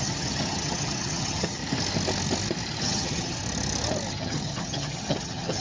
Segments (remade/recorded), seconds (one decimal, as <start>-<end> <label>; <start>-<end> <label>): 0.0-1.6 remade; 1.6-2.8 recorded; 2.8-3.4 remade; 3.4-4.1 recorded; 4.1-5.6 remade